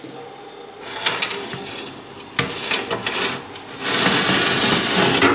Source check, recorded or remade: recorded